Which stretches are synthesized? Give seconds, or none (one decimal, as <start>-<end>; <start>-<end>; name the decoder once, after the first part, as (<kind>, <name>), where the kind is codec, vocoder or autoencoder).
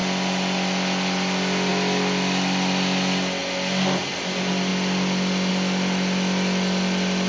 none